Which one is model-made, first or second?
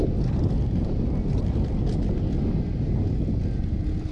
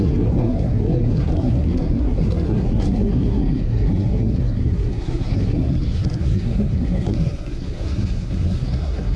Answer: second